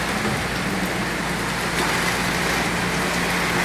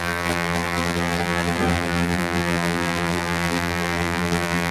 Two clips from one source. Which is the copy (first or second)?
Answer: second